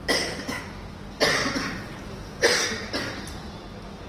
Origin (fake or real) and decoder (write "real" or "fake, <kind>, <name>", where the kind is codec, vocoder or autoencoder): real